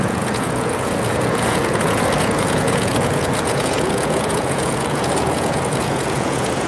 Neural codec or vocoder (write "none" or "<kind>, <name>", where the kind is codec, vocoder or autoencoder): vocoder, Vocos